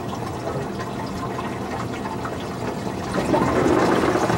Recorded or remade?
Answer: recorded